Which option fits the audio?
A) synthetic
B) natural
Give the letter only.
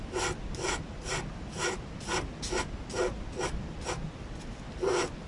B